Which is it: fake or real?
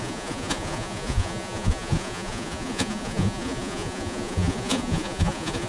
fake